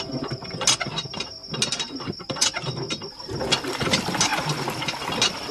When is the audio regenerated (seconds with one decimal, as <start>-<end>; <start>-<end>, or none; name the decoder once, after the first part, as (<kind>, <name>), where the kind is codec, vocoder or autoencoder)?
none